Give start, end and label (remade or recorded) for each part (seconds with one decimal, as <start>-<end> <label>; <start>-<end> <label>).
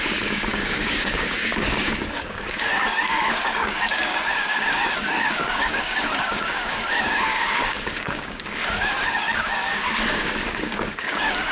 0.0-11.5 remade